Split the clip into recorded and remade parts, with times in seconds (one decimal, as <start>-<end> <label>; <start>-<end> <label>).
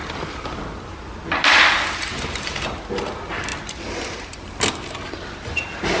0.0-6.0 recorded